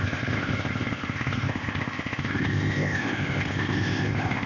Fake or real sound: fake